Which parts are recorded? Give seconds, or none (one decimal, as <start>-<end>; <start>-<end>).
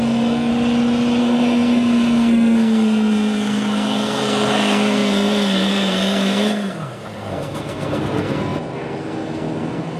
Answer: 0.5-1.2